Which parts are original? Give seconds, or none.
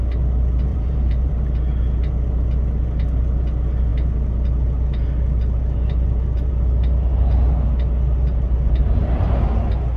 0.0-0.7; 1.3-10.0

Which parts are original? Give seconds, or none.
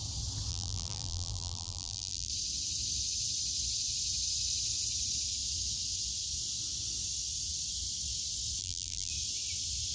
0.0-0.5; 2.3-8.6; 9.1-9.9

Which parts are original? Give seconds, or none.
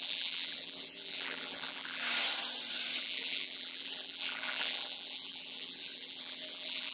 2.0-3.0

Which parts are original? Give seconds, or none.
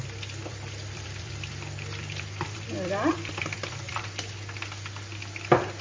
0.0-0.5; 4.0-5.8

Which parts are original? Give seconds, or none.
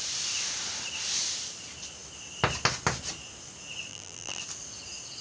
0.0-3.9; 4.4-5.2